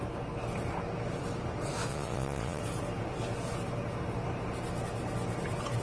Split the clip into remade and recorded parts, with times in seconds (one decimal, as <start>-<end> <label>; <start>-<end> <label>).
0.0-1.9 recorded; 1.9-2.6 remade; 2.6-5.8 recorded